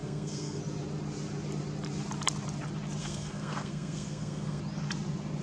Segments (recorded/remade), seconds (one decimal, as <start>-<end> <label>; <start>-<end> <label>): 0.0-0.6 remade; 0.6-3.0 recorded; 3.0-4.6 remade; 4.6-5.4 recorded